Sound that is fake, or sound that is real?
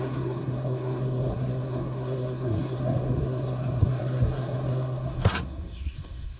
fake